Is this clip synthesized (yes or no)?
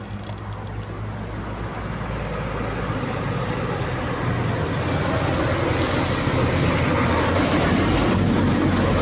no